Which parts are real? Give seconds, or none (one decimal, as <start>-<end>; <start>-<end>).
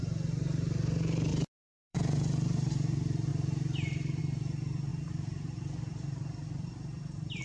0.0-1.3; 2.7-3.3; 4.2-4.9